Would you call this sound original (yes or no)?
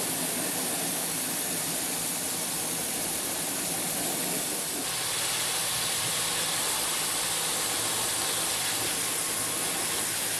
yes